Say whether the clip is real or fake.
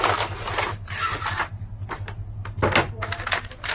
real